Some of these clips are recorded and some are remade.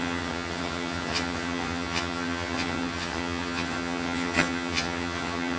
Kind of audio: remade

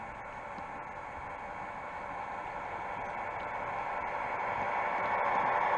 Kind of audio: recorded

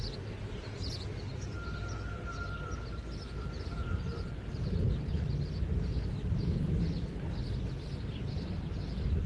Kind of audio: recorded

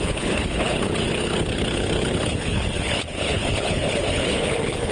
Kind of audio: remade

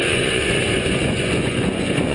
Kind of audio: remade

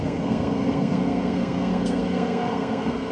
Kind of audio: remade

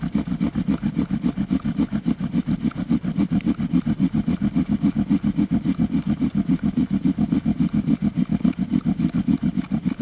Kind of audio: recorded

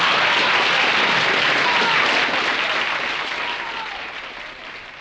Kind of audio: recorded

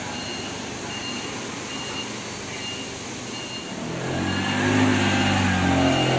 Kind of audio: recorded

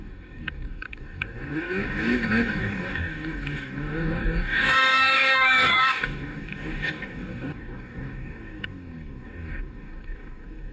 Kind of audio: remade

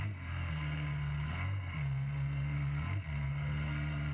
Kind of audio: remade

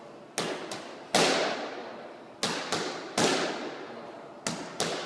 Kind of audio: recorded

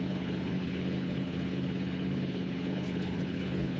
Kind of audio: remade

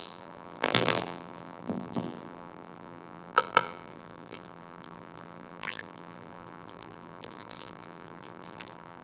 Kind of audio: remade